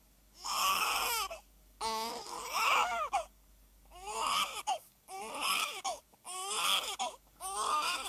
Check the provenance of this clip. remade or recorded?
remade